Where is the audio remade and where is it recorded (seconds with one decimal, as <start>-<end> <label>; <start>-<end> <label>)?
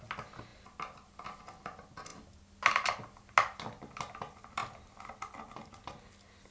0.0-6.5 recorded